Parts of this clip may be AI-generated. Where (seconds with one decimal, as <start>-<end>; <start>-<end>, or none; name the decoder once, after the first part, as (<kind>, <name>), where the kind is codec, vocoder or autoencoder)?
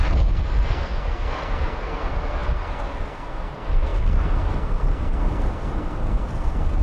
0.0-6.8 (codec, SNAC)